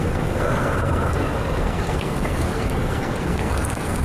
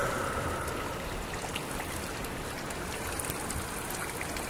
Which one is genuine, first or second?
second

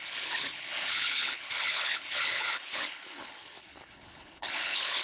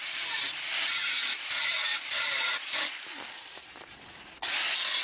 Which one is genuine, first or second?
second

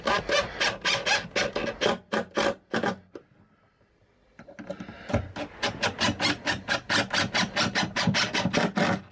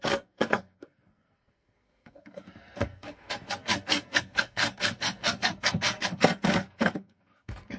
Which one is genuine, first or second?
first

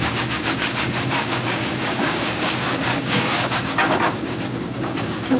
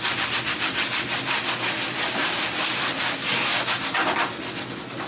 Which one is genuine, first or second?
second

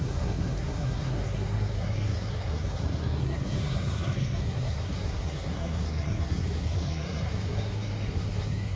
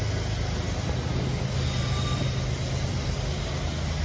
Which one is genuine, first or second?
second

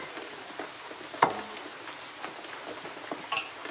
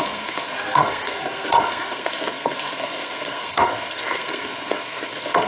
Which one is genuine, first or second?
first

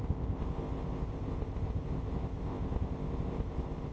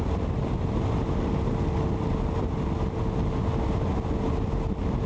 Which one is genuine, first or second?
second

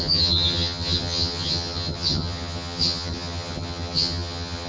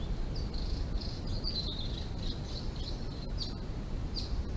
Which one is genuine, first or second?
second